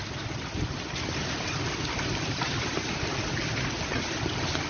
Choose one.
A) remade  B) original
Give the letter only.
B